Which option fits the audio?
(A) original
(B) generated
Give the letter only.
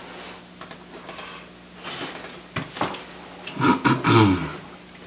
A